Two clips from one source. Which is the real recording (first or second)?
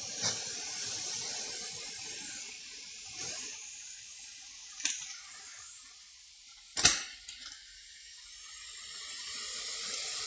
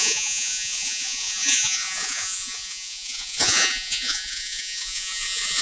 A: first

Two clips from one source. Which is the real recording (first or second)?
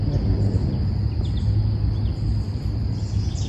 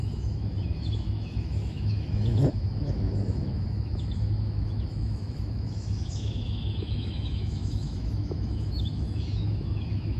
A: first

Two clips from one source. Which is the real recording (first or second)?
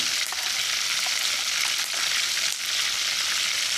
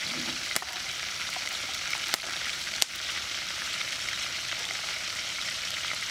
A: first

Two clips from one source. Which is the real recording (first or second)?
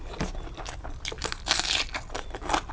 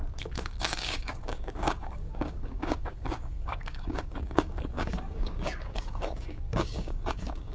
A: first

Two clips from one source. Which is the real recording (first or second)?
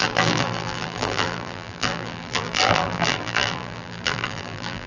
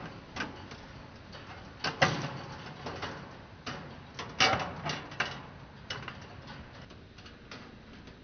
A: second